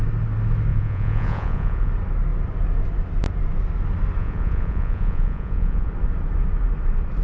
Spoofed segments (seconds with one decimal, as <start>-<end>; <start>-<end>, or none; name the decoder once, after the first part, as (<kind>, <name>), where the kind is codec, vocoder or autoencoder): 0.7-1.9 (vocoder, Vocos); 4.2-5.9